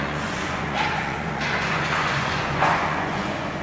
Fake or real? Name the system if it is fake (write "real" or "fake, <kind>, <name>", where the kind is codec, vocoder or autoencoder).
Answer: fake, vocoder, Vocos